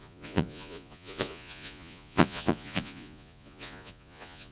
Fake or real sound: fake